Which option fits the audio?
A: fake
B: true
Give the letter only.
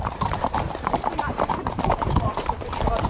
A